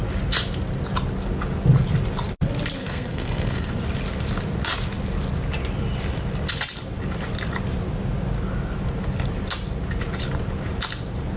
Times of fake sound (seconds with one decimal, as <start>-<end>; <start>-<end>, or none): 2.8-3.7